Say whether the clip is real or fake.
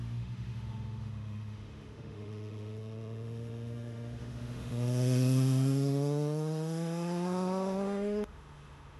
fake